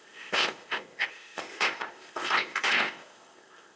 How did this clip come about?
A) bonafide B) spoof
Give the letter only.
B